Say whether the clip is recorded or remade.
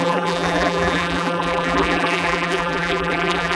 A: remade